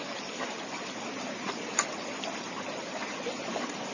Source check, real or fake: fake